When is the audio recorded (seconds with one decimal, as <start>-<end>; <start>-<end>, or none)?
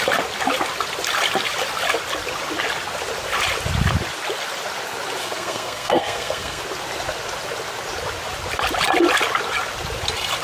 0.0-5.2; 6.6-10.4